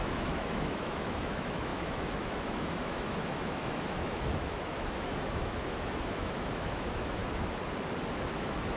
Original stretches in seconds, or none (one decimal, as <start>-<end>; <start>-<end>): 7.2-8.3